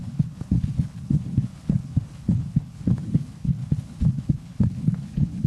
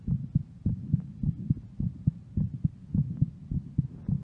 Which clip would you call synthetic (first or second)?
first